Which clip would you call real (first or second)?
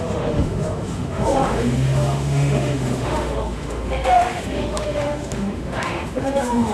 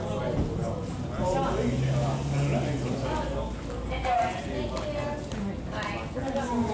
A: second